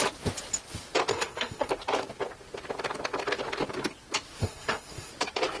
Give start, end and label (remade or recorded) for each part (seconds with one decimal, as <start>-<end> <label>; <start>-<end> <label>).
0.0-1.1 recorded; 1.1-1.7 remade; 1.7-4.4 recorded; 4.4-5.1 remade; 5.1-5.6 recorded